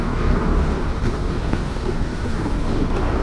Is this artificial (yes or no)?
yes